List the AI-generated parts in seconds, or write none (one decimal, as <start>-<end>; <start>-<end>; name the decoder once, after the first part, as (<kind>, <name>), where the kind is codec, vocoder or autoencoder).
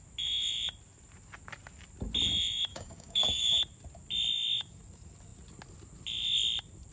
2.7-3.6 (codec, DAC)